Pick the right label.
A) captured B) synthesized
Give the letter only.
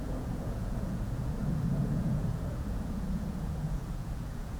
B